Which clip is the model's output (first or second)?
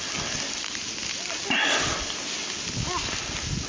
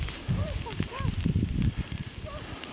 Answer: second